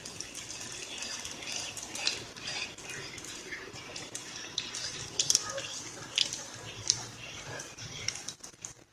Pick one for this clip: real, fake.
real